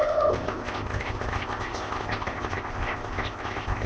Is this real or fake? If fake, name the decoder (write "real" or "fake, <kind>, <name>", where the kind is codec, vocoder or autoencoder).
fake, codec, ZipCodec